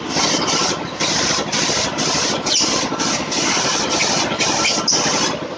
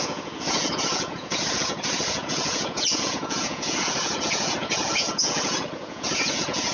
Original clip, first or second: first